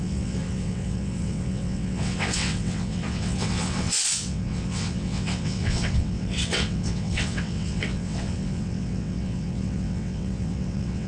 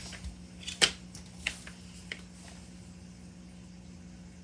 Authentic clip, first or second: second